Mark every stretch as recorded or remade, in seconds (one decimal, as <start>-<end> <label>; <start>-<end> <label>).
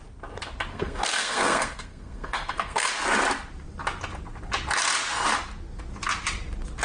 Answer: 0.0-0.7 recorded; 0.7-2.9 remade; 2.9-6.8 recorded